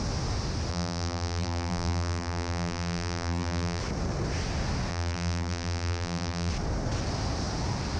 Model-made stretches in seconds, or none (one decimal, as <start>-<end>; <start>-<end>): 0.7-3.8; 4.9-6.5